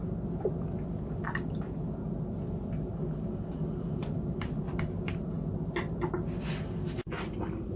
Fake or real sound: real